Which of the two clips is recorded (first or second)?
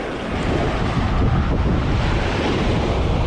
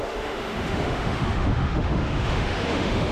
first